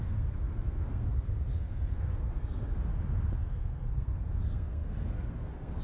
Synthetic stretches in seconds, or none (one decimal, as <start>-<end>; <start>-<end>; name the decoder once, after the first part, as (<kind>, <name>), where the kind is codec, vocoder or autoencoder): 0.0-2.9 (codec, SNAC); 3.4-5.8